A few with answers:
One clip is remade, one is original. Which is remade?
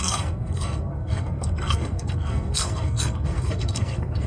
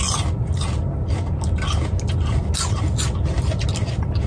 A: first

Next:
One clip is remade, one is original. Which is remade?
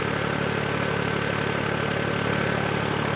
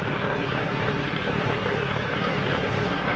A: second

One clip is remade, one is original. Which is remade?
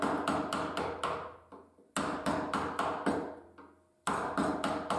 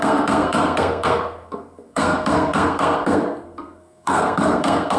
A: second